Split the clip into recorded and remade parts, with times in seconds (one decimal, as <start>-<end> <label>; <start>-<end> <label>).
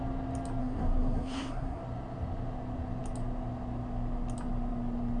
0.0-0.6 recorded; 0.6-1.8 remade; 1.8-5.2 recorded